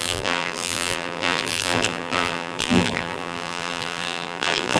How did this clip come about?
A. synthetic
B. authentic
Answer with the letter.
A